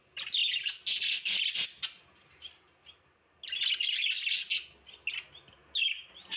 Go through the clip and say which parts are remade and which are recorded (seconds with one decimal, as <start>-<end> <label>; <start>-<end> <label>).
0.0-0.4 recorded; 0.4-2.9 remade; 2.9-6.4 recorded